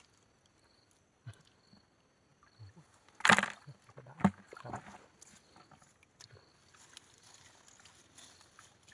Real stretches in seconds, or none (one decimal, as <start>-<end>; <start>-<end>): 0.0-8.9